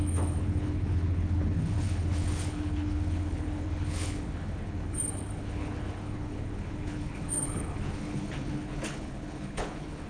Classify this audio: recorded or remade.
remade